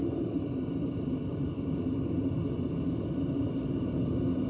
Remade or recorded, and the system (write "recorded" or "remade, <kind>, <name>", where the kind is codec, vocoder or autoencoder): recorded